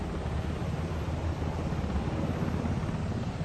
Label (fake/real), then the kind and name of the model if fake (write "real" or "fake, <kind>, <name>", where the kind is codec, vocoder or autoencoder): real